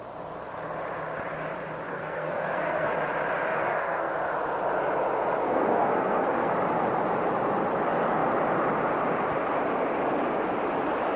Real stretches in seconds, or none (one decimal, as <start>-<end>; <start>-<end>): 0.0-1.9; 2.9-3.5; 4.1-5.4; 6.5-11.2